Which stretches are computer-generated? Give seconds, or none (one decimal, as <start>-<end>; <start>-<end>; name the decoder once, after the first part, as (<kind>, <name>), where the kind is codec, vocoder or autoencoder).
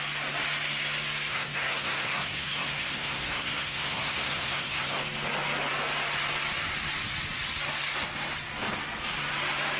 1.3-5.0 (codec, SNAC)